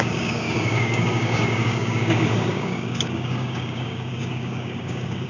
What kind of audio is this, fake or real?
fake